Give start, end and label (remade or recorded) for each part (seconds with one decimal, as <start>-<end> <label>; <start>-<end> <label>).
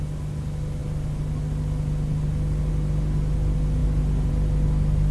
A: 0.0-5.1 recorded